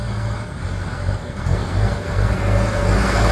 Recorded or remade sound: remade